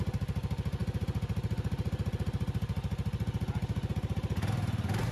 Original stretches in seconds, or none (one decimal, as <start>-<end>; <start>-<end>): 0.0-5.1